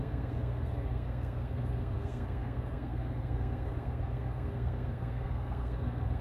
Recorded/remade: remade